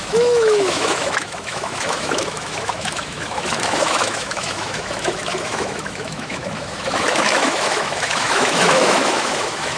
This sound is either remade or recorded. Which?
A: remade